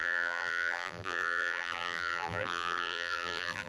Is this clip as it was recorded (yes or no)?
no